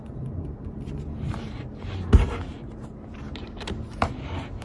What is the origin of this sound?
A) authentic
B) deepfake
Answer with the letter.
B